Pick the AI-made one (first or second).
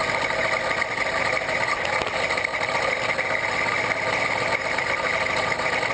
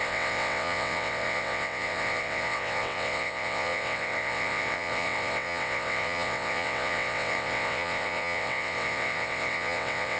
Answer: second